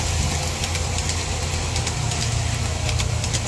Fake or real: real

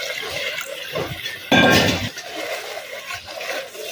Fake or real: real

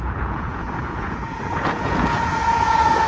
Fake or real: fake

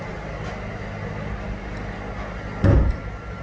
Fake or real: real